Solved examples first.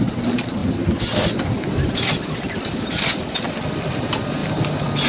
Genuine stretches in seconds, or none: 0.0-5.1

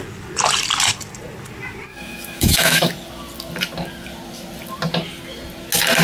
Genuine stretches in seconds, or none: 0.0-1.9; 2.9-6.0

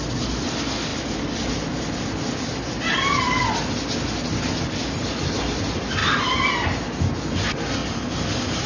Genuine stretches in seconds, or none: 0.0-0.9; 3.5-6.0; 6.5-7.8

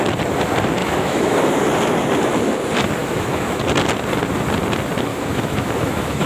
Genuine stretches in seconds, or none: 0.0-0.8; 1.5-3.0; 3.6-5.1

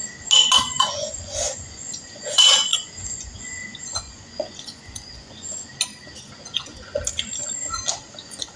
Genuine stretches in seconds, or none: 0.0-0.8; 5.7-6.2; 6.9-8.2